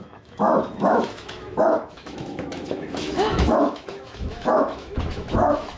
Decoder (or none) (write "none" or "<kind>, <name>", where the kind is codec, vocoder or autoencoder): autoencoder, DAC-VAE